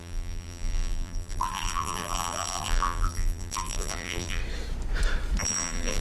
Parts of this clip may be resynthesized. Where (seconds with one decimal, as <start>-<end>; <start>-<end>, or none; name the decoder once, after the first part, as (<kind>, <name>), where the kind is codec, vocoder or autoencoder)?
0.0-4.4 (vocoder, BigVGAN v2); 5.4-6.0